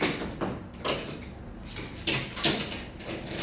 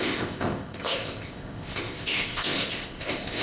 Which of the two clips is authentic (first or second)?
first